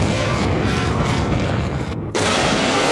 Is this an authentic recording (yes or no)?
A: no